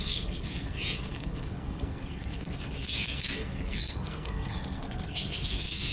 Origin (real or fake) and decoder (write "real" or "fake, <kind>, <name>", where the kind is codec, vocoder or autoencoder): fake, codec, SNAC